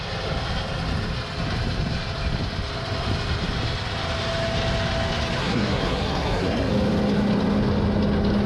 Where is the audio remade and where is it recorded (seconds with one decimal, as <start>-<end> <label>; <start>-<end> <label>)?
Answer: 0.0-5.4 recorded; 5.4-6.7 remade; 6.7-8.5 recorded